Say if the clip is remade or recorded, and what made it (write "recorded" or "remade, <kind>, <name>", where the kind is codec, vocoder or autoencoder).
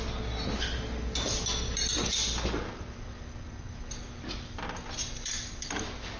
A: recorded